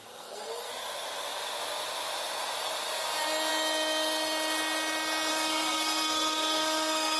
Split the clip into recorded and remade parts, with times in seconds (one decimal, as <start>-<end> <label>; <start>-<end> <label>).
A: 0.0-0.7 remade; 0.7-5.3 recorded; 5.3-7.2 remade